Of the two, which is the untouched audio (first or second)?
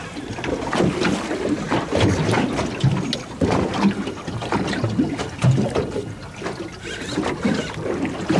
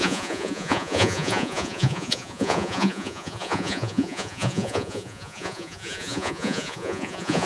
first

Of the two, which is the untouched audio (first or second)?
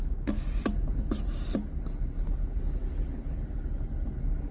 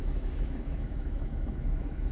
first